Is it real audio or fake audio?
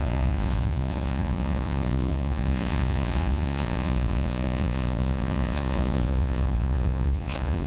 fake